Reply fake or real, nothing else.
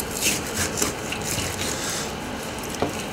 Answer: real